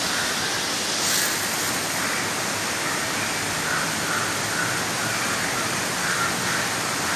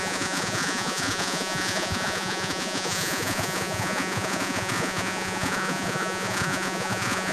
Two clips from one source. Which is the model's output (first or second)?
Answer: second